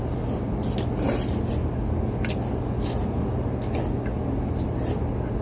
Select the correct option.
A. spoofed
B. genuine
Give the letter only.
B